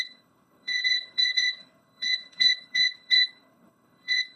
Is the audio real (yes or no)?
no